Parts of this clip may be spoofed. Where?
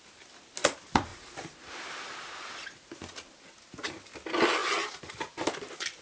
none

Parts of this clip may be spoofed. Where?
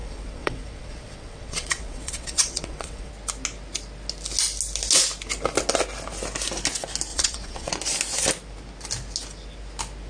0.0-3.1 (vocoder, WaveNeXt); 7.1-7.7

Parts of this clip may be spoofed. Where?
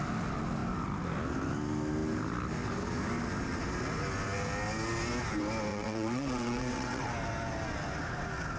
5.7-7.1 (vocoder, WaveNeXt)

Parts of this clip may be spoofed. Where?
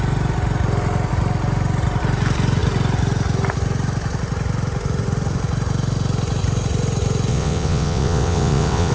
7.3-8.9 (vocoder, WaveNeXt)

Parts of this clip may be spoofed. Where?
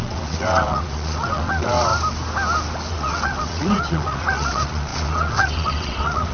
0.0-1.9 (vocoder, WaveNeXt); 2.9-6.3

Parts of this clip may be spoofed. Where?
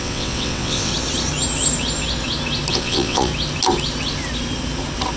0.0-0.9 (vocoder, WaveNeXt); 2.7-3.3